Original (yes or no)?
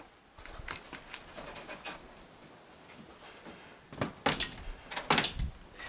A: yes